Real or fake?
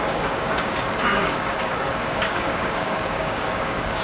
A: fake